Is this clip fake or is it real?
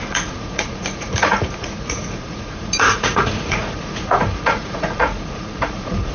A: fake